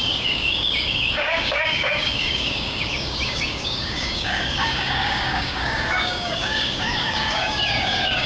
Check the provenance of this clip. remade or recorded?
remade